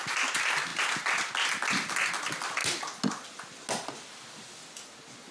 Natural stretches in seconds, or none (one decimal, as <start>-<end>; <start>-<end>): 0.0-5.3